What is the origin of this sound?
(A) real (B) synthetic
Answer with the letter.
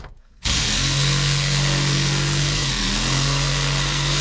B